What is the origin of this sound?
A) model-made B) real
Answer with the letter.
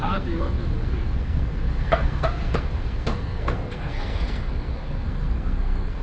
A